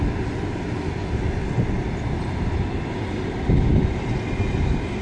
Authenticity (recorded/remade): recorded